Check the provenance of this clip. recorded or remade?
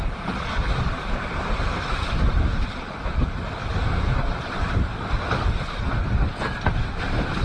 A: recorded